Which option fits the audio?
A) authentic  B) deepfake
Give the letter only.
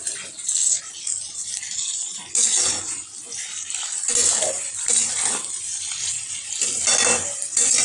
A